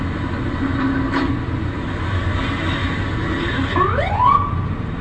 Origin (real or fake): real